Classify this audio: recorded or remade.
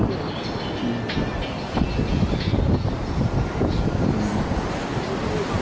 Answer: recorded